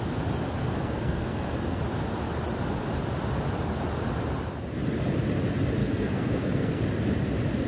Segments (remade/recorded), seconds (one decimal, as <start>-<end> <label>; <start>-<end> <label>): 0.0-0.6 recorded; 0.6-1.8 remade; 1.8-5.8 recorded; 5.8-6.8 remade; 6.8-7.7 recorded